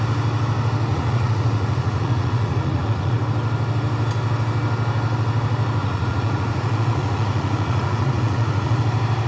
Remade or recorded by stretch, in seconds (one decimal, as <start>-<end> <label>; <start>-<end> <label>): 0.0-0.9 recorded; 0.9-3.2 remade; 3.2-5.8 recorded; 5.8-8.8 remade; 8.8-9.3 recorded